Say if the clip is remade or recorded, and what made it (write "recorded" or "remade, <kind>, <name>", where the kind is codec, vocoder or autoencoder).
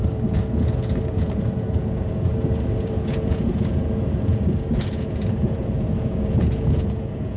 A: remade, vocoder, Vocos